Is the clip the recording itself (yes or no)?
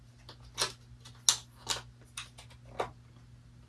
yes